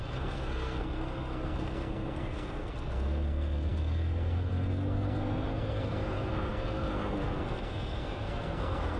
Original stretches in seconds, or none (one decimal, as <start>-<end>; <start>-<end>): none